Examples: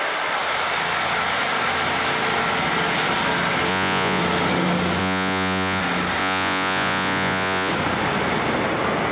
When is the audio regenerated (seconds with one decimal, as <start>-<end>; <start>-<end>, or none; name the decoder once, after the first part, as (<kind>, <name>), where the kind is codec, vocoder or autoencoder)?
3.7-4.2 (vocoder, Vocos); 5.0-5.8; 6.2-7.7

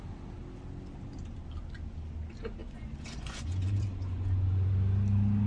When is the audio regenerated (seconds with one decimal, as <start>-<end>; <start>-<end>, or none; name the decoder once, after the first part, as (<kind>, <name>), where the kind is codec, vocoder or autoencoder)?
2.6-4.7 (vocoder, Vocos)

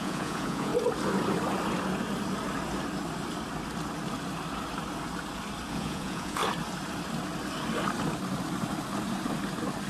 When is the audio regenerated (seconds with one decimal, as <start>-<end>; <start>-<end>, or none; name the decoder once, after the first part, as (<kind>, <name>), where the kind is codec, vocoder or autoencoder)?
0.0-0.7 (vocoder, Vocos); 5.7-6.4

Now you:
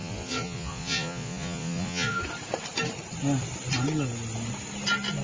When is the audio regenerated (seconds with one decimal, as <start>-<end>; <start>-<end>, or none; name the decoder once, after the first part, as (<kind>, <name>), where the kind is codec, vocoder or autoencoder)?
0.0-2.2 (vocoder, Vocos)

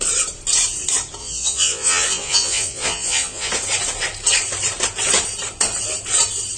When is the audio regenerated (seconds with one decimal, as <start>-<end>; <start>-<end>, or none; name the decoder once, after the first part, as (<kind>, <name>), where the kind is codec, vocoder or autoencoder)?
1.2-3.5 (vocoder, Vocos)

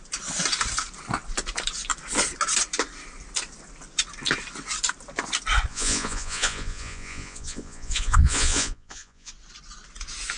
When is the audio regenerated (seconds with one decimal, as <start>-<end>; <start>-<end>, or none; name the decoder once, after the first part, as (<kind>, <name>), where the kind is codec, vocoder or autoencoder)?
5.7-9.3 (vocoder, Vocos)